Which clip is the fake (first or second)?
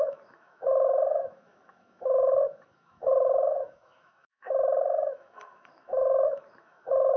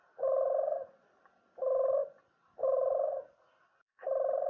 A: first